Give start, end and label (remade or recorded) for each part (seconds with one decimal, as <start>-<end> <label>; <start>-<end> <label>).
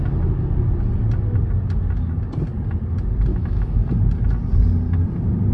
0.0-3.3 recorded; 3.3-3.8 remade; 3.8-5.5 recorded